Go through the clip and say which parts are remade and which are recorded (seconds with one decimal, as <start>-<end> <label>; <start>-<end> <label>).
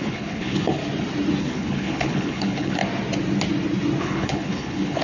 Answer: 0.0-0.8 remade; 0.8-1.4 recorded; 1.4-2.8 remade; 2.8-4.0 recorded; 4.0-5.0 remade